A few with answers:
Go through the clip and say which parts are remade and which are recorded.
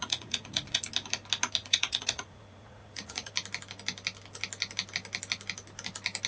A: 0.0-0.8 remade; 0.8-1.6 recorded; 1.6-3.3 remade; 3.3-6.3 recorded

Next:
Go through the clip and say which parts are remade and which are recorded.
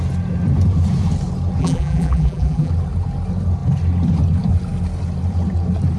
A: 0.0-1.6 recorded; 1.6-2.7 remade; 2.7-6.0 recorded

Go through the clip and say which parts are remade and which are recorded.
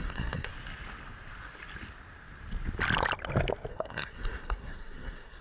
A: 0.0-0.5 remade; 0.5-3.7 recorded; 3.7-5.4 remade